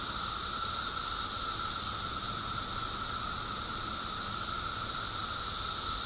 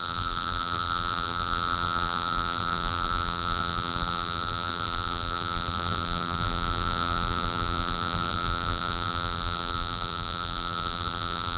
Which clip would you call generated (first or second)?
second